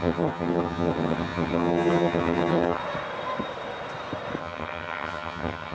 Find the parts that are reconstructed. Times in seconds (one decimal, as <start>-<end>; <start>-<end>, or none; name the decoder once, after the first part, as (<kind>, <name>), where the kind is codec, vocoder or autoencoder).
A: 0.0-2.8 (vocoder, HiFi-GAN); 4.4-5.7